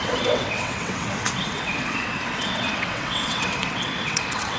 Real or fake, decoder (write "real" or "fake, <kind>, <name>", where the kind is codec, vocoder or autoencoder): fake, vocoder, WaveNeXt